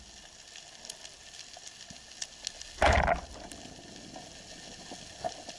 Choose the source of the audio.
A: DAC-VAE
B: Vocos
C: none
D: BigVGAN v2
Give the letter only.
C